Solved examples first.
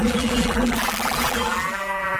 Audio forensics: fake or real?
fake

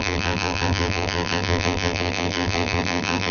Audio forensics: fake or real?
fake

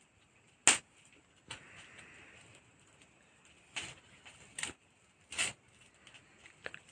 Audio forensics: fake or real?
real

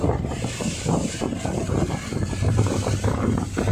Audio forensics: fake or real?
fake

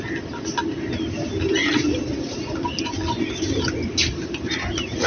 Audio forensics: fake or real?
real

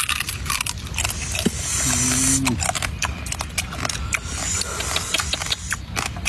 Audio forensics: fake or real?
real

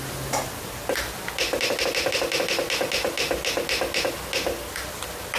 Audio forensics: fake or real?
real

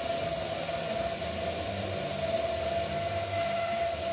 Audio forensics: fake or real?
real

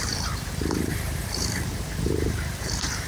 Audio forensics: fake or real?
fake